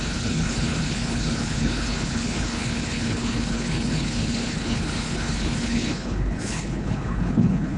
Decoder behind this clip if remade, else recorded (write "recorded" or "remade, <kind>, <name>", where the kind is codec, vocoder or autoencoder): remade, codec, HILCodec